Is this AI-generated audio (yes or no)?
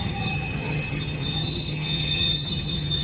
yes